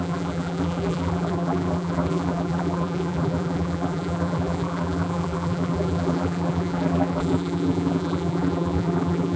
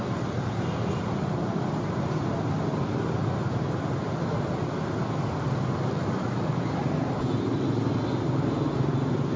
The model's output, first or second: first